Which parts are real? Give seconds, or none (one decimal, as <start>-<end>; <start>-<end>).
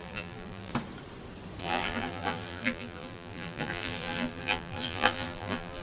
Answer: 0.7-1.6